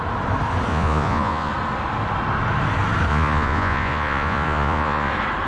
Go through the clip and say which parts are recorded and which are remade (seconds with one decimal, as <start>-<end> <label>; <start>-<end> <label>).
0.0-0.7 recorded; 0.7-1.5 remade; 1.5-3.1 recorded; 3.1-5.1 remade; 5.1-5.5 recorded